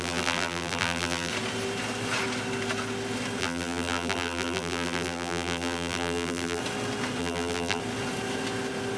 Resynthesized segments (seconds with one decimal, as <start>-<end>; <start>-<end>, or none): 0.0-1.3; 3.4-6.6; 7.2-7.8